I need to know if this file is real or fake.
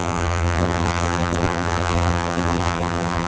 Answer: fake